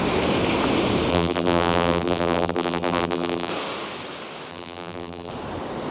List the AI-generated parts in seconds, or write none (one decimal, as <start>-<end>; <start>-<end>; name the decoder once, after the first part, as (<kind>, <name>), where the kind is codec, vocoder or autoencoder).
1.1-3.5 (vocoder, BigVGAN v2); 4.5-5.3

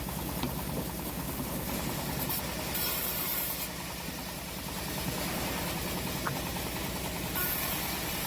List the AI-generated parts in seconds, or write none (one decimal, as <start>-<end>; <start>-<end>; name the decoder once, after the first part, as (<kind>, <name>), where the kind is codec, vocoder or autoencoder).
0.0-3.3 (vocoder, BigVGAN v2); 4.1-8.3